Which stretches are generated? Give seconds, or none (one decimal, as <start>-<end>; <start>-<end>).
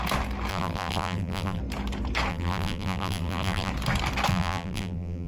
0.5-1.6; 2.3-3.7; 4.3-5.3